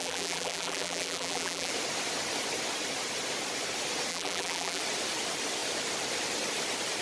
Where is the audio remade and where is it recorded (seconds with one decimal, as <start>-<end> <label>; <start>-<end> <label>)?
0.0-1.7 remade; 1.7-4.1 recorded; 4.1-4.8 remade; 4.8-7.0 recorded